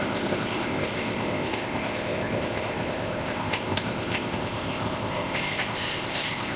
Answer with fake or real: fake